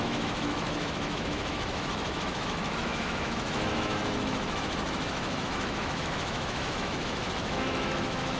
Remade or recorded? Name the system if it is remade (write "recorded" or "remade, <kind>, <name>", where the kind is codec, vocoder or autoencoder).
remade, autoencoder, DAC-VAE